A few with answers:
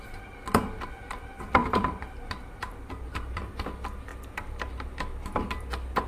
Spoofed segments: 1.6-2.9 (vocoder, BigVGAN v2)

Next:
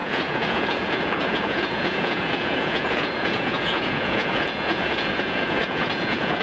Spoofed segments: 0.0-6.4 (vocoder, Vocos)